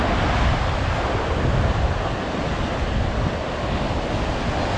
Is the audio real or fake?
real